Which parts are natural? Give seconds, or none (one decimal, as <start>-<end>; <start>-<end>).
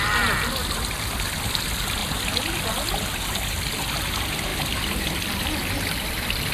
0.0-4.5; 5.7-6.5